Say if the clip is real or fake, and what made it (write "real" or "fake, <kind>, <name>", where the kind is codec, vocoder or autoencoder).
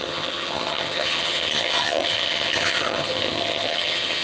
fake, vocoder, HiFi-GAN